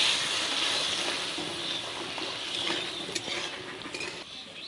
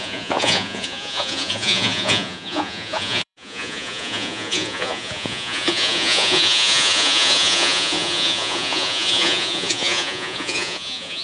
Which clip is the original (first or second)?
first